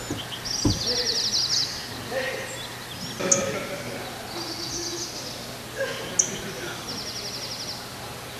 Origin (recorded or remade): recorded